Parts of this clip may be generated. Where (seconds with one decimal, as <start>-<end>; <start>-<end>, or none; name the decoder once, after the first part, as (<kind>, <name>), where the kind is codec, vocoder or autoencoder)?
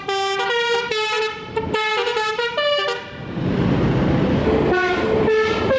none